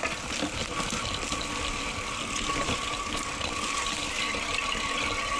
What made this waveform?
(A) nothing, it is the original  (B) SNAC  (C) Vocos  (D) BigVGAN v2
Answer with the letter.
A